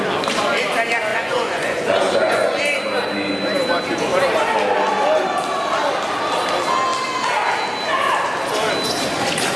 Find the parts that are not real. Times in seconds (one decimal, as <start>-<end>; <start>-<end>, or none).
1.1-2.6